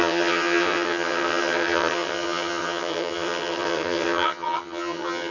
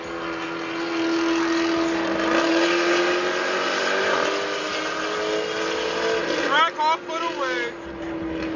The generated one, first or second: first